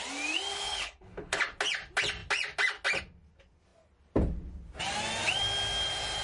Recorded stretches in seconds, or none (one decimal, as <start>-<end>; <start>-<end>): 0.0-0.5; 1.4-6.2